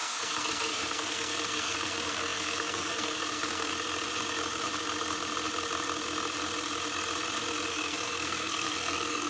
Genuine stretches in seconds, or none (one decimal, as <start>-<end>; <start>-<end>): 3.7-7.7